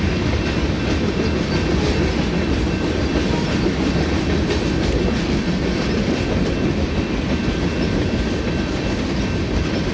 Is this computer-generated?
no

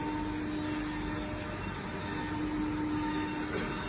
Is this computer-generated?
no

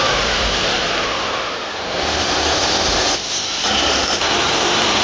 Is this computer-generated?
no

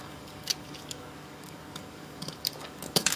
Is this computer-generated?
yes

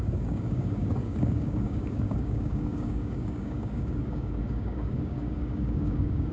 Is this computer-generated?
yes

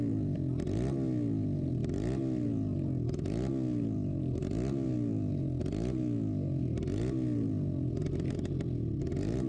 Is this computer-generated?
no